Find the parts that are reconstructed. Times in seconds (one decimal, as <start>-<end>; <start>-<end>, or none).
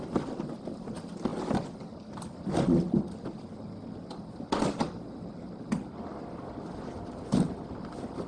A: none